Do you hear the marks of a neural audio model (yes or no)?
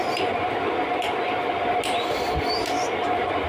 no